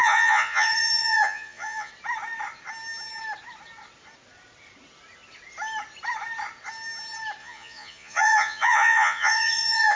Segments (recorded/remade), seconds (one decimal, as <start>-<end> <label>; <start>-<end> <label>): 0.0-1.9 remade; 1.9-7.4 recorded; 7.4-10.0 remade